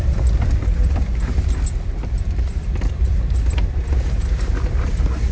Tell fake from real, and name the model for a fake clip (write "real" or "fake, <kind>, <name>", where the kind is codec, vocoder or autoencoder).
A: real